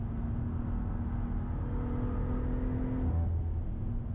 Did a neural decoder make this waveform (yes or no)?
no